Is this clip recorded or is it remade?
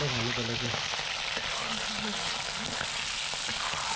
recorded